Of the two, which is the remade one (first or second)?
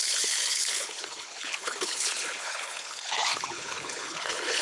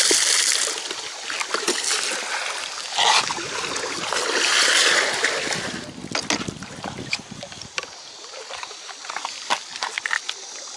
first